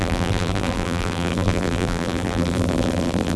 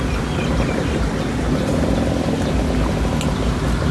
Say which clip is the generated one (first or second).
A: first